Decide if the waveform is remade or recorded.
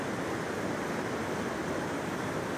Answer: recorded